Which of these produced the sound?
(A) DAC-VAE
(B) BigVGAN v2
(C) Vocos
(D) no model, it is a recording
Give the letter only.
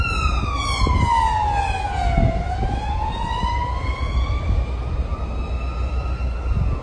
D